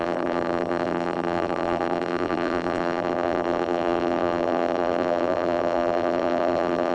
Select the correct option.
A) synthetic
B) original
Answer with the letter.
A